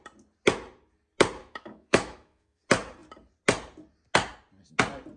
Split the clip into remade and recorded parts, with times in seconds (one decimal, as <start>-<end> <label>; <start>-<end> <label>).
0.0-1.4 recorded; 1.4-2.6 remade; 2.6-5.2 recorded